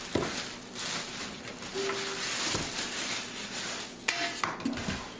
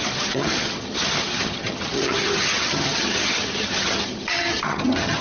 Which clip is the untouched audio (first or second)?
first